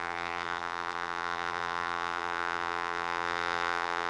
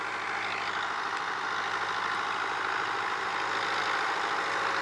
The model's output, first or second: first